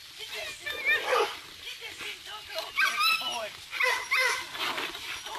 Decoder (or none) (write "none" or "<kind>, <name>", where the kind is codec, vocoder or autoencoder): none